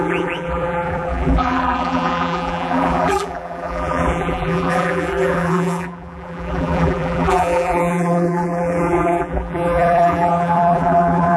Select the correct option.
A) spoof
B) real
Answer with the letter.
A